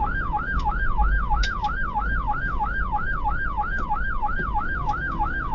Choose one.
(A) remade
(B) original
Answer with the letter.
A